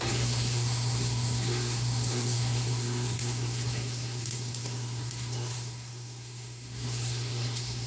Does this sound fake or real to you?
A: fake